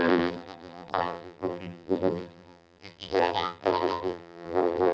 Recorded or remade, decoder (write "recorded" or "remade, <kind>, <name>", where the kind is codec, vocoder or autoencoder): remade, vocoder, BigVGAN v2